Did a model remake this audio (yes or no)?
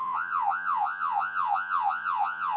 yes